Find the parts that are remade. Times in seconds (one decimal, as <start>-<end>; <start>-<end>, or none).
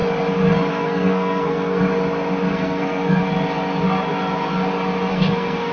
0.7-1.8; 2.5-3.2; 5.1-5.7